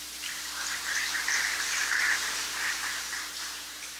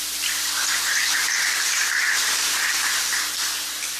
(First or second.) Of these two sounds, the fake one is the first